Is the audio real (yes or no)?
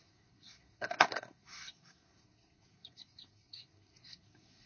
no